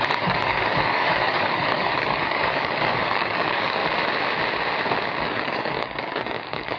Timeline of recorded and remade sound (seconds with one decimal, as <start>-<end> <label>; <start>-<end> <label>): 0.0-3.8 remade; 3.8-5.2 recorded; 5.2-6.8 remade